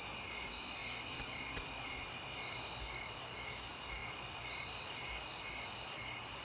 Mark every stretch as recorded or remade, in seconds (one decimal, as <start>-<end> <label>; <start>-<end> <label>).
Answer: 0.0-6.4 recorded